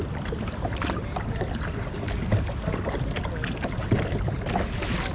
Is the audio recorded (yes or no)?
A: yes